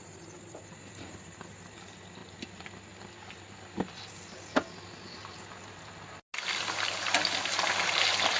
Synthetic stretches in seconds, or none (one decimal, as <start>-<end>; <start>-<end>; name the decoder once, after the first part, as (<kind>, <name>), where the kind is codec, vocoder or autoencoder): none